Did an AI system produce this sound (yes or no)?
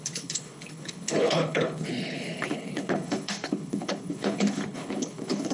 yes